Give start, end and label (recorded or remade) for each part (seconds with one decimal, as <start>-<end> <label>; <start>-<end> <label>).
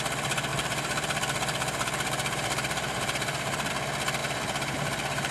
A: 0.0-0.5 recorded; 0.5-3.7 remade; 3.7-4.2 recorded; 4.2-5.3 remade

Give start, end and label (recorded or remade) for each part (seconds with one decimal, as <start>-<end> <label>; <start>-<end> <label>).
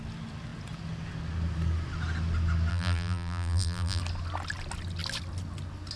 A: 0.0-2.7 recorded; 2.7-4.0 remade; 4.0-6.0 recorded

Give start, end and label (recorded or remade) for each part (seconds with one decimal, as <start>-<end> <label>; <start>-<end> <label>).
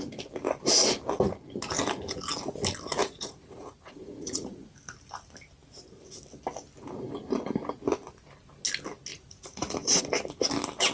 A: 0.0-3.0 recorded; 3.0-4.7 remade; 4.7-9.1 recorded; 9.1-10.0 remade; 10.0-10.9 recorded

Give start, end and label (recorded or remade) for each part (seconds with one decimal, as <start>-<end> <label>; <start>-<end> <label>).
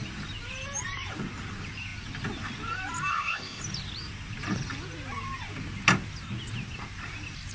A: 0.0-3.1 recorded; 3.1-3.6 remade; 3.6-7.5 recorded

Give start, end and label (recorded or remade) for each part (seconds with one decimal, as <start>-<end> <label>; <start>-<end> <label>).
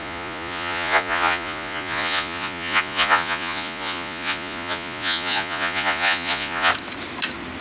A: 0.0-6.7 remade; 6.7-7.6 recorded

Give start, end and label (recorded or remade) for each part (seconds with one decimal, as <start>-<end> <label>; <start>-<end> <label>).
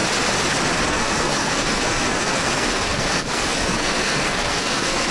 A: 0.0-0.9 recorded; 0.9-5.1 remade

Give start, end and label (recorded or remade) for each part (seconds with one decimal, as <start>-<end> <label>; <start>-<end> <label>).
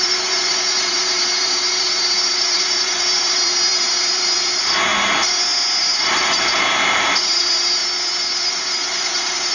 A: 0.0-4.9 remade; 4.9-5.8 recorded; 5.8-7.8 remade; 7.8-8.5 recorded; 8.5-9.5 remade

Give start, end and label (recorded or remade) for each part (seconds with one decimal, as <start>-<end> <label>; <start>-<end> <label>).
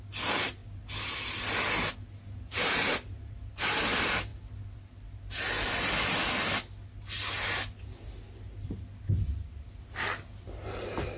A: 0.0-11.2 recorded